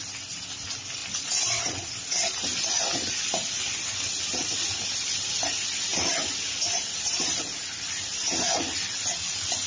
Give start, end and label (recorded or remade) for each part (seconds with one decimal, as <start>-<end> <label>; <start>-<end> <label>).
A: 0.0-9.7 recorded

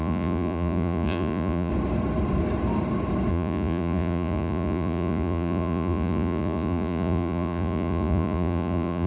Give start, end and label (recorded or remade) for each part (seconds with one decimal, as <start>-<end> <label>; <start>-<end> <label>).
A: 0.0-1.7 remade; 1.7-3.3 recorded; 3.3-9.1 remade

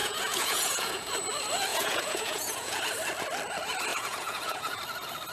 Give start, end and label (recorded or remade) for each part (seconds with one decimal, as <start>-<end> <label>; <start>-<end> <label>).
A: 0.0-1.1 remade; 1.1-1.7 recorded; 1.7-2.8 remade; 2.8-3.9 recorded; 3.9-4.8 remade; 4.8-5.3 recorded

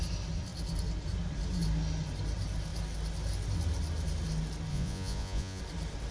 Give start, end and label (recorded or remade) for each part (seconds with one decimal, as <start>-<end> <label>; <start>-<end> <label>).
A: 0.0-4.7 recorded; 4.7-5.6 remade; 5.6-6.1 recorded

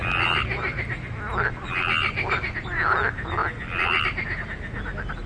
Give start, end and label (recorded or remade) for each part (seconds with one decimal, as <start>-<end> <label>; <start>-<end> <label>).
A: 0.0-5.3 recorded